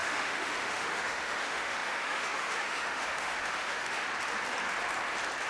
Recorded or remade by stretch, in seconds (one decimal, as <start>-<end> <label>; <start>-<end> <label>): 0.0-4.1 remade; 4.1-5.5 recorded